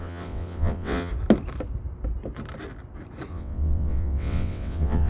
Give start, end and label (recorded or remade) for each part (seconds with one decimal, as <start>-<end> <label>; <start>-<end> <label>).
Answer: 0.0-1.1 remade; 1.1-3.3 recorded; 3.3-5.1 remade